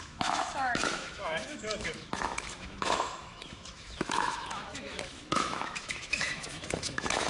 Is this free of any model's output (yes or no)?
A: no